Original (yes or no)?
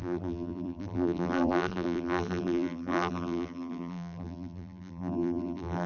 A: no